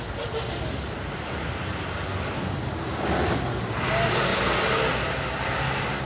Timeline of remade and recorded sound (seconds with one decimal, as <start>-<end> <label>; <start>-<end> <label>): 0.0-6.0 recorded